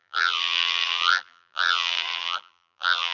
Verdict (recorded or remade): remade